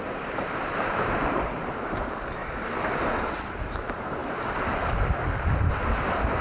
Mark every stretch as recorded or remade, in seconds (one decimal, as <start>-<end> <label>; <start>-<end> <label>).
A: 0.0-2.4 remade; 2.4-3.6 recorded; 3.6-4.2 remade; 4.2-5.7 recorded; 5.7-6.4 remade